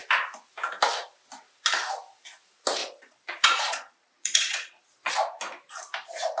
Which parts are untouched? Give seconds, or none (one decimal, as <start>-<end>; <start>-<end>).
0.0-2.8; 5.1-6.4